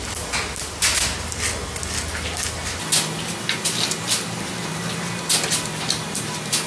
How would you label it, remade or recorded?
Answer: recorded